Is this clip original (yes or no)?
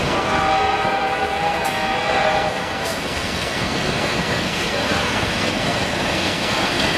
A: no